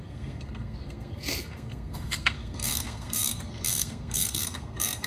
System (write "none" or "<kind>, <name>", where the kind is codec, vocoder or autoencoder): codec, SNAC